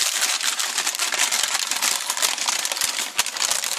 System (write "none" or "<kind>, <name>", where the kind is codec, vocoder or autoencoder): none